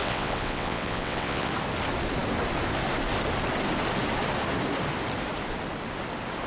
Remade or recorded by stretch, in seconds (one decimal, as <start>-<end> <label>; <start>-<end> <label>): 0.0-1.5 remade; 1.5-6.5 recorded